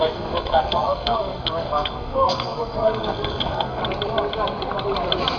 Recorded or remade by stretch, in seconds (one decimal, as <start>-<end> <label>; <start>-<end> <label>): 0.0-3.8 remade; 3.8-5.4 recorded